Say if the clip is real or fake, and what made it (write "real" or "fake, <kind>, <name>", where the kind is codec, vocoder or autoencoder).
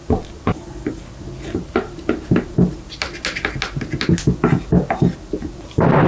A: real